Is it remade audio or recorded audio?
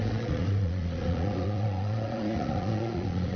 remade